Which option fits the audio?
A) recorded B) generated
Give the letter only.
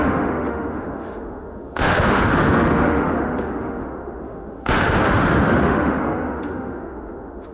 B